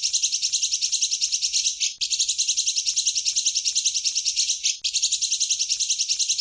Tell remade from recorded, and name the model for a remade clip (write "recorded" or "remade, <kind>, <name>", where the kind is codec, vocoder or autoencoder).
recorded